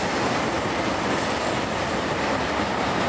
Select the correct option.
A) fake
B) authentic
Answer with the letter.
B